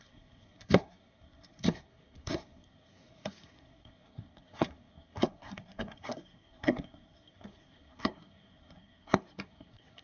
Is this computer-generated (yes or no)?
yes